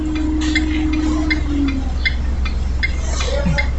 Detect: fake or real real